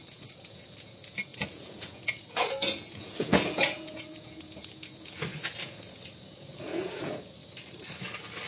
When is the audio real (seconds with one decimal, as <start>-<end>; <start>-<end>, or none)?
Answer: 7.4-8.5